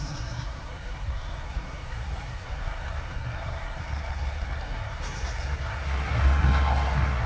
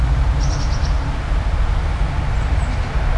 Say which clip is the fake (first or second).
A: first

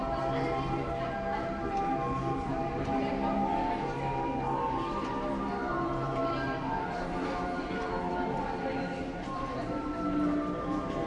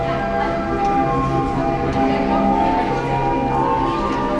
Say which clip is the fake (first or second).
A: first